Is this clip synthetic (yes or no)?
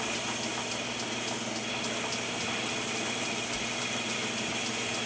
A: no